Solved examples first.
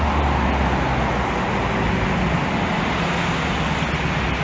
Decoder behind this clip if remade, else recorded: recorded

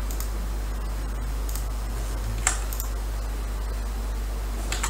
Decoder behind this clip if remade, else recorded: recorded